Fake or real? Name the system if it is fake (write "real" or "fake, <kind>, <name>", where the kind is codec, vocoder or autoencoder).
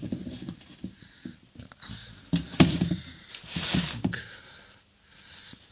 fake, vocoder, BigVGAN v2